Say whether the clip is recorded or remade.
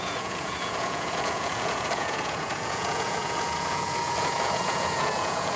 remade